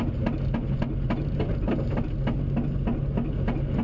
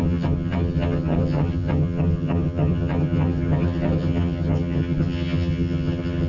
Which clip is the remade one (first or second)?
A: second